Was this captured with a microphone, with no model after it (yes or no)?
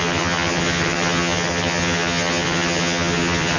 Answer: no